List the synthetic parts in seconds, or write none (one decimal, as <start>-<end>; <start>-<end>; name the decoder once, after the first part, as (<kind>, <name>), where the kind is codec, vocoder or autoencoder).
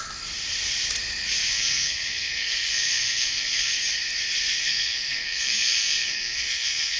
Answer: 1.5-3.7 (codec, SNAC); 4.6-7.0